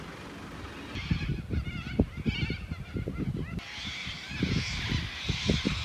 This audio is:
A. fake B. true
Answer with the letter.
B